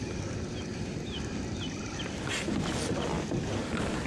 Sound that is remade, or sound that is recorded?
recorded